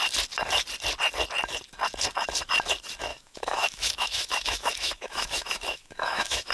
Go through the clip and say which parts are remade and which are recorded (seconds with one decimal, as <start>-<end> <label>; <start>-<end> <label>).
0.0-3.1 recorded; 3.1-6.5 remade